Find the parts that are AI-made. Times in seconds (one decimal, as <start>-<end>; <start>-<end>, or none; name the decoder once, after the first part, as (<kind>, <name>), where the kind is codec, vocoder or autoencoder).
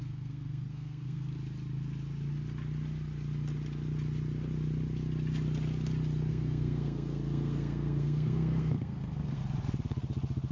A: 0.0-1.3 (codec, SNAC); 6.3-9.4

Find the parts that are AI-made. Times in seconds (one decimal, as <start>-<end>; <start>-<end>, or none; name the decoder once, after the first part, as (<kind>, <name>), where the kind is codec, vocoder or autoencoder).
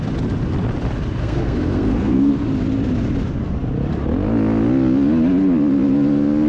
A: 1.2-2.3 (codec, SNAC)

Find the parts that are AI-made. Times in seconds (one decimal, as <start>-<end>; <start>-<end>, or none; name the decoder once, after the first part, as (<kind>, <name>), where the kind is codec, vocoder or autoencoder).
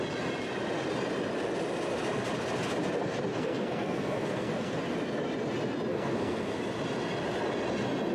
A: 3.3-4.8 (codec, SNAC); 5.9-6.6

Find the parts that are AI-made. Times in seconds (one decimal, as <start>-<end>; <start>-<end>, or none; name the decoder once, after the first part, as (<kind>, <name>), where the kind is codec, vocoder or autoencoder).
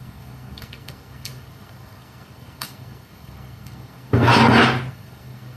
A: 0.0-4.3 (codec, SNAC); 4.9-5.6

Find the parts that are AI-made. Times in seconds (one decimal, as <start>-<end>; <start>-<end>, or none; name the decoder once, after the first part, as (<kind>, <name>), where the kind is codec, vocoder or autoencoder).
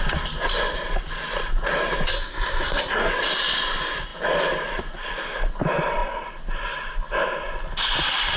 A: 2.1-3.1 (codec, SNAC)